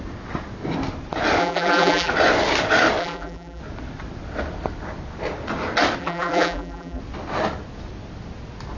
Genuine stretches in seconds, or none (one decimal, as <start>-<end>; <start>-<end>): 0.0-1.4; 2.1-3.0; 3.6-6.0; 7.0-8.8